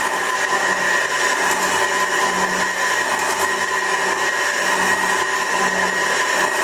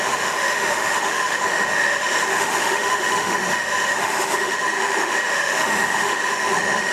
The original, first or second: first